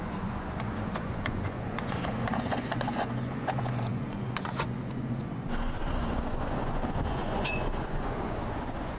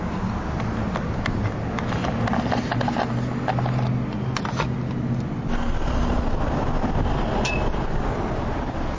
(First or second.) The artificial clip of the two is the first